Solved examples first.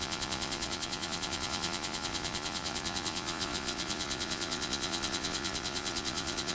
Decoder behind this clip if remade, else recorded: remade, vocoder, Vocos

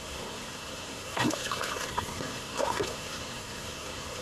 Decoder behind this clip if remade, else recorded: remade, codec, SNAC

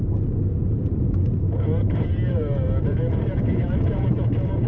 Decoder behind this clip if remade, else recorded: remade, vocoder, BigVGAN v2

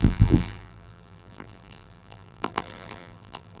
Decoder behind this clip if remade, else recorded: remade, vocoder, BigVGAN v2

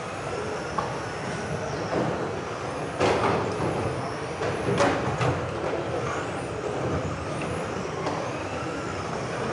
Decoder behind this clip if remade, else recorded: recorded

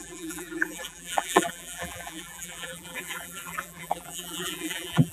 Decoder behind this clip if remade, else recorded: remade, vocoder, BigVGAN v2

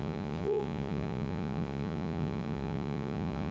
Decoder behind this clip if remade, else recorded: remade, vocoder, Vocos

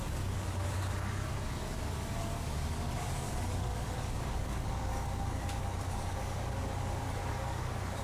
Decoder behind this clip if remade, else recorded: remade, codec, DAC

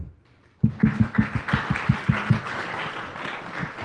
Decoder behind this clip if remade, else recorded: recorded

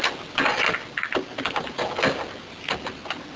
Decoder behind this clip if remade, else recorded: recorded